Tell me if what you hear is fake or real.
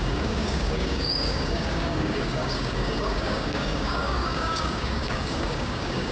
fake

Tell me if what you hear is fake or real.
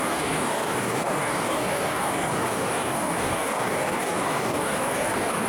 fake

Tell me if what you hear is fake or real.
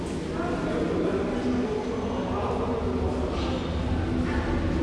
real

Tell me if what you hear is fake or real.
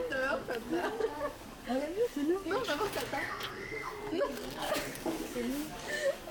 fake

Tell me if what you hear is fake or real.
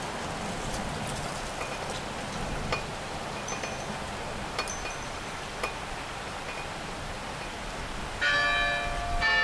real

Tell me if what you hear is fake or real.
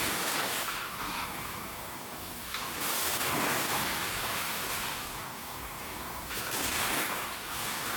fake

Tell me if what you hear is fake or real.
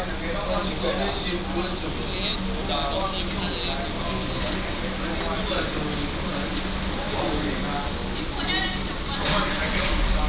real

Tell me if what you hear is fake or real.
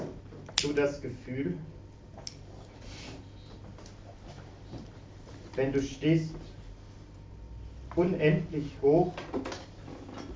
real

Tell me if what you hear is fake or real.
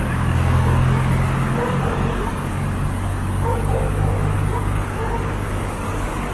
fake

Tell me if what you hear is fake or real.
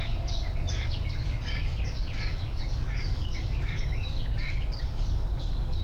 fake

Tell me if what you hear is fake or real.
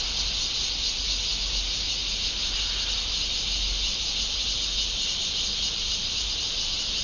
real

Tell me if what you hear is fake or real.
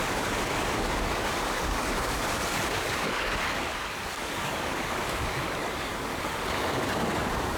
fake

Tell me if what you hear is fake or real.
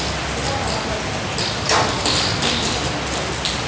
real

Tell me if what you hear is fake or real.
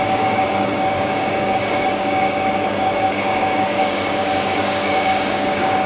fake